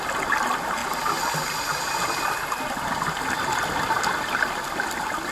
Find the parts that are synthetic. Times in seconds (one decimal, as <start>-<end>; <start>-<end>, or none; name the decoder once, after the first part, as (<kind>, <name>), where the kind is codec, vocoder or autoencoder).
none